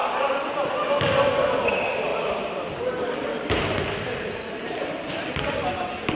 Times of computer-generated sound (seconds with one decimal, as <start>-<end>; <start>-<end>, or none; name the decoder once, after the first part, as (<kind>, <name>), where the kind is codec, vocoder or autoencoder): 2.1-5.3 (vocoder, BigVGAN v2)